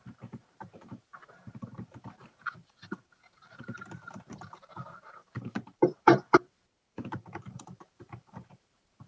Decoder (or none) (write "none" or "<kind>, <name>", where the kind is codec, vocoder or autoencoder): vocoder, BigVGAN v2